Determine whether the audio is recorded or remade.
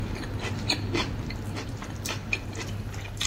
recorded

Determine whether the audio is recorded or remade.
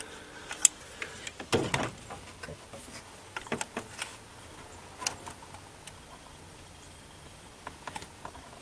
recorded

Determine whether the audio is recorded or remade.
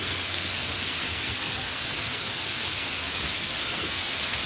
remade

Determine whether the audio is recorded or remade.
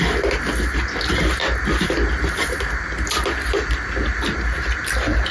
recorded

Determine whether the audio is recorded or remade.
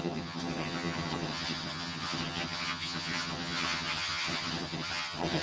remade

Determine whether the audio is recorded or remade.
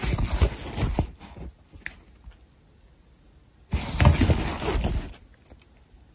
recorded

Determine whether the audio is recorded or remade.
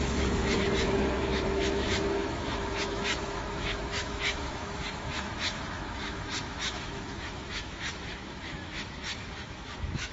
remade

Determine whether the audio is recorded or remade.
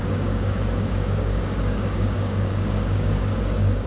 remade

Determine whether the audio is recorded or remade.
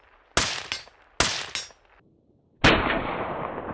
recorded